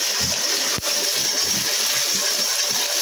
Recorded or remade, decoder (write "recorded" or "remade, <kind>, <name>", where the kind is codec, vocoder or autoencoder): recorded